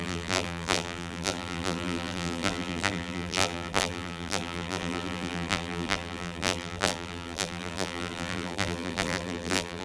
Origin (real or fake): fake